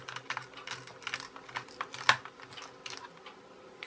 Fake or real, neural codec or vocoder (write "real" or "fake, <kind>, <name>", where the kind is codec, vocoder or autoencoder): real